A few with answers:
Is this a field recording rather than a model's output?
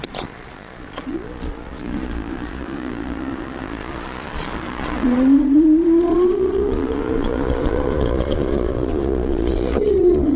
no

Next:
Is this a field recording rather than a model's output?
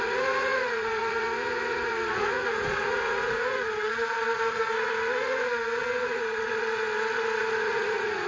no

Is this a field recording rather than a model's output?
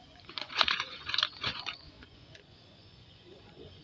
no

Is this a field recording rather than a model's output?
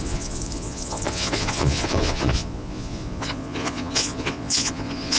no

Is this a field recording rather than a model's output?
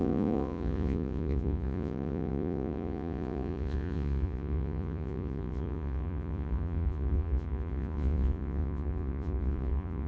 no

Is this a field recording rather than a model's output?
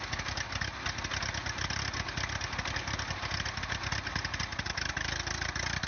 yes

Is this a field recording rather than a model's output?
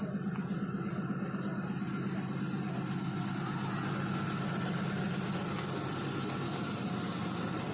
yes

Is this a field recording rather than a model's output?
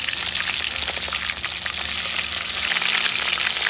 yes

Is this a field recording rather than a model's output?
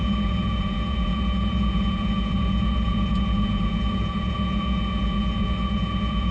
no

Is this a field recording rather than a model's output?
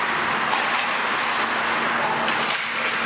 yes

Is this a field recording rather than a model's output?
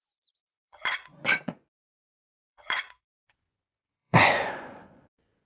no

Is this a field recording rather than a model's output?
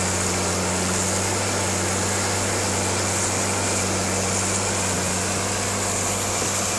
yes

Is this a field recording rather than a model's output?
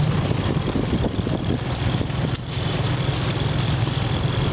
yes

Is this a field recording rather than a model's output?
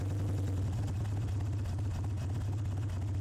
yes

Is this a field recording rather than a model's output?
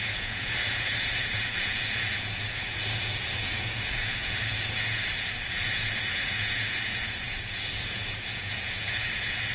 no